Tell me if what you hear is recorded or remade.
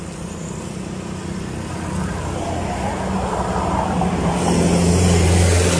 recorded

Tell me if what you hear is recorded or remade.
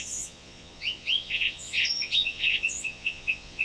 remade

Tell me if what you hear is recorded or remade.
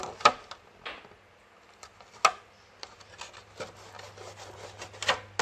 recorded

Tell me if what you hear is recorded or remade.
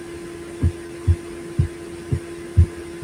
recorded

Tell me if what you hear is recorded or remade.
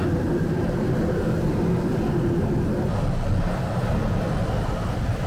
recorded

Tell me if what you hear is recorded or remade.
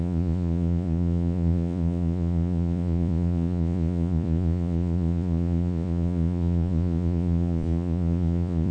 remade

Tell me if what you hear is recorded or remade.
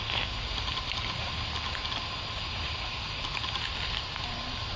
recorded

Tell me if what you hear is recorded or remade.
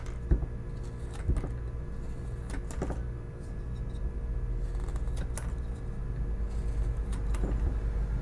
recorded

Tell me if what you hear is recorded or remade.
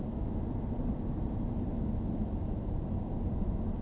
recorded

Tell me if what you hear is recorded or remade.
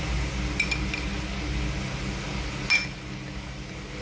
recorded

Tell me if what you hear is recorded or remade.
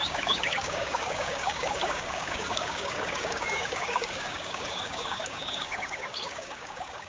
remade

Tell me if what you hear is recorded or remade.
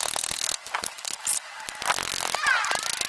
recorded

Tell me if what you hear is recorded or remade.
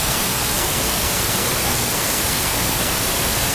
remade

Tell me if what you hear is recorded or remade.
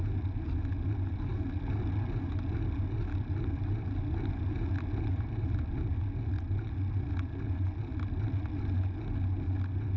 recorded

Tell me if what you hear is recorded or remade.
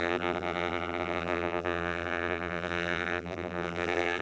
remade